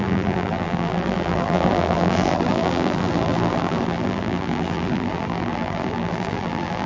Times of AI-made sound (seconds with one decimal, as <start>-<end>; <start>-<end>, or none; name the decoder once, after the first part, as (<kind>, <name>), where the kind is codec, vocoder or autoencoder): 0.0-6.9 (vocoder, BigVGAN v2)